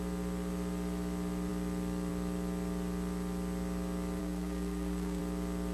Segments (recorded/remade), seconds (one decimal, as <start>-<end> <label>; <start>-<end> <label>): 0.0-4.2 recorded; 4.2-5.2 remade; 5.2-5.7 recorded